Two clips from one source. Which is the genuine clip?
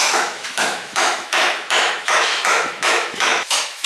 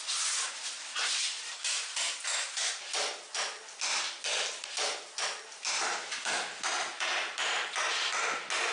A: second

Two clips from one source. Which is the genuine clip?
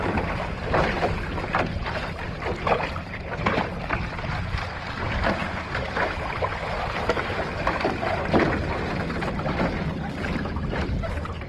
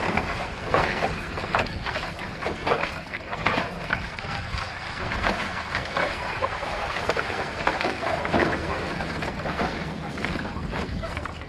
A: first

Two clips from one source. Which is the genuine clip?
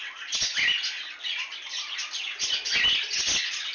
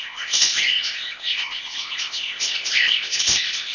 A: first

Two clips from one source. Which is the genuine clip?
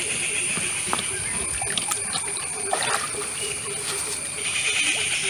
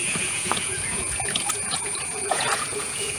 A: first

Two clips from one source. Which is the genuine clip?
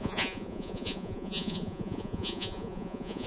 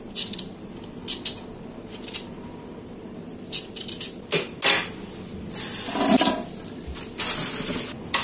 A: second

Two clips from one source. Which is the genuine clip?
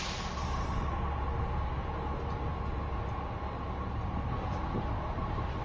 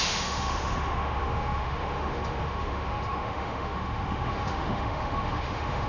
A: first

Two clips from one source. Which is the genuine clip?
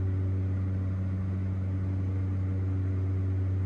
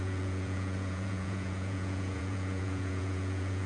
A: first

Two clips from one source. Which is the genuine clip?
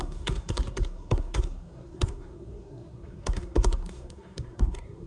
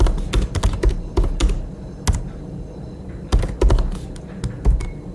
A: second